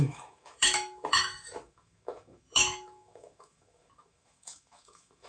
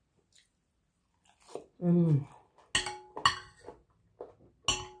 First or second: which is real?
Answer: second